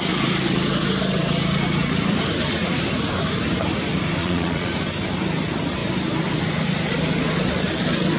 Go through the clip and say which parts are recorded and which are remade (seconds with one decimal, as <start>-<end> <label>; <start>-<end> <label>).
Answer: 0.0-4.2 recorded; 4.2-4.7 remade; 4.7-8.2 recorded